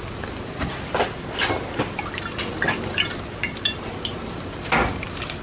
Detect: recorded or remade recorded